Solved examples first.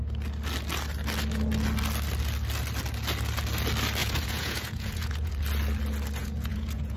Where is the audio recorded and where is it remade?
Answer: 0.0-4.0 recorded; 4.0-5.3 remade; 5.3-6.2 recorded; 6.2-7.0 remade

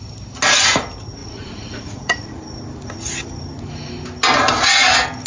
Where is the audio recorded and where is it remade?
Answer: 0.0-1.2 recorded; 1.2-2.4 remade; 2.4-5.3 recorded